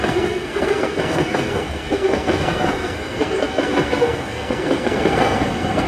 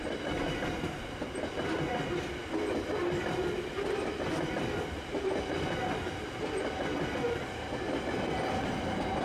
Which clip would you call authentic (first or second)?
second